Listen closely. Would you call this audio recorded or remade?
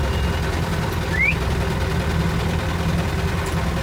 recorded